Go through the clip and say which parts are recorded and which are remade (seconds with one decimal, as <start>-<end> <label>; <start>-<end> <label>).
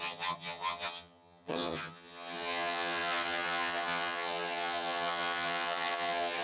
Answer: 0.0-6.4 remade